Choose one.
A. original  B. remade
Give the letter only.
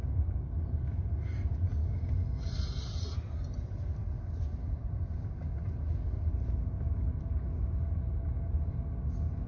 A